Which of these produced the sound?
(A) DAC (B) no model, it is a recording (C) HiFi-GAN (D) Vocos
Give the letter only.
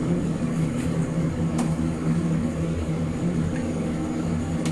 A